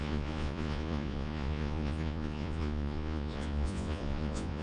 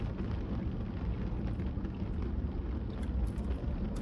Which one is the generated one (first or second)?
first